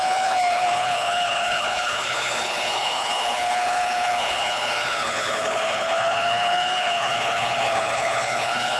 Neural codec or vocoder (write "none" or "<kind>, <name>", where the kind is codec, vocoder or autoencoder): codec, HILCodec